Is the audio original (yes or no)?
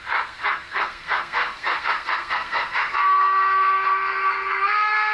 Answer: no